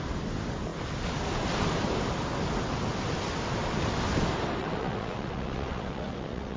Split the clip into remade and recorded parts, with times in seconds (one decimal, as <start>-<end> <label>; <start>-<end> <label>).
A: 0.0-4.6 recorded; 4.6-6.6 remade